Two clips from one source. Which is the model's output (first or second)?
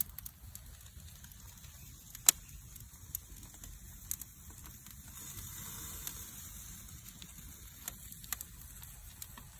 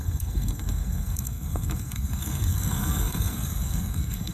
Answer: second